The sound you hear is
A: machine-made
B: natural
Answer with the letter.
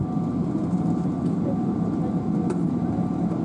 B